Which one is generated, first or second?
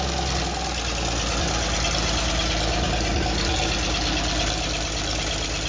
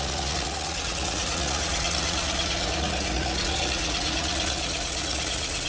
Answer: second